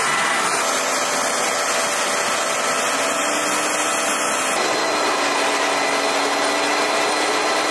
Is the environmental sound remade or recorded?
recorded